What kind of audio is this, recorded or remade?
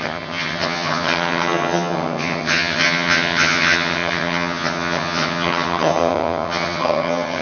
remade